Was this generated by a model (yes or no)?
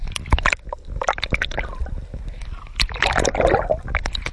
no